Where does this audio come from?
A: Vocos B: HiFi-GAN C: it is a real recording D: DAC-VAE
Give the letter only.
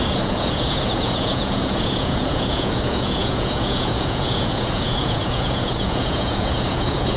A